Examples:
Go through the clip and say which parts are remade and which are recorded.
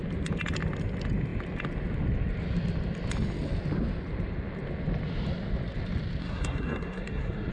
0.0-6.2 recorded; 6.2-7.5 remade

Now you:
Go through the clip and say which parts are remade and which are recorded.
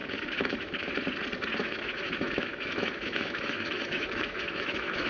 0.0-0.9 remade; 0.9-1.6 recorded; 1.6-5.1 remade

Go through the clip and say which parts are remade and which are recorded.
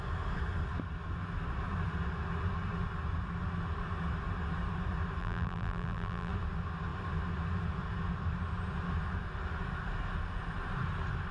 0.0-5.2 recorded; 5.2-6.3 remade; 6.3-11.3 recorded